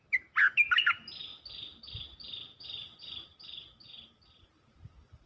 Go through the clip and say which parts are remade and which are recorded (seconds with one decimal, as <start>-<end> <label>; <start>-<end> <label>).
0.0-5.3 recorded